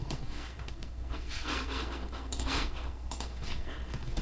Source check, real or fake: fake